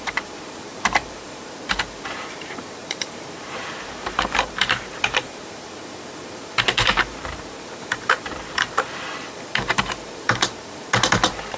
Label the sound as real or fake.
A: fake